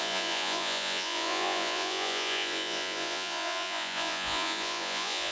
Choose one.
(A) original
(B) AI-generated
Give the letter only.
B